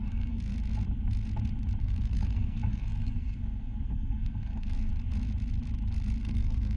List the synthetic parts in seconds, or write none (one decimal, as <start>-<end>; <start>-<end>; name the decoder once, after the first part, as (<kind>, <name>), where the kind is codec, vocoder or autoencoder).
0.0-0.5 (codec, SNAC); 1.8-4.9; 6.2-6.8